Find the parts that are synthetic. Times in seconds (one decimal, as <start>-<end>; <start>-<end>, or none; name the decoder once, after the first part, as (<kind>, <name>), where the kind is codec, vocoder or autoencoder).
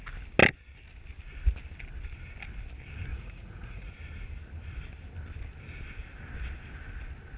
3.1-3.9 (vocoder, Vocos)